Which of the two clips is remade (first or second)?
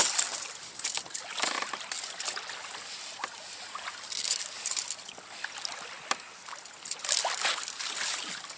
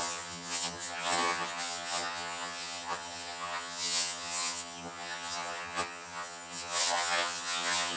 second